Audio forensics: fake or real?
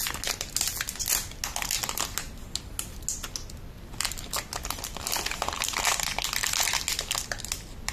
real